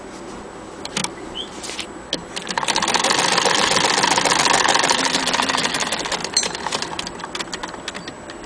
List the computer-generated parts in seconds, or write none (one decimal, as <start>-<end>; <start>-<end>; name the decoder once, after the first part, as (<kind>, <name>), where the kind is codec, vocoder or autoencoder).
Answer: 6.2-7.0 (vocoder, BigVGAN v2)